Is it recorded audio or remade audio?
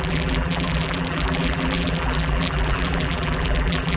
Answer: remade